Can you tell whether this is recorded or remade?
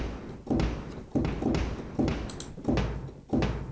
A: recorded